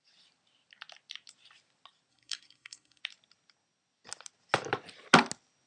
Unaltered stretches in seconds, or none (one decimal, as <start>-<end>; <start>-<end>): 0.0-2.1; 3.0-5.7